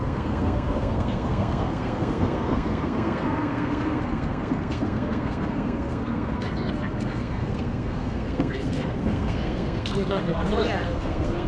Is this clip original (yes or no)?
no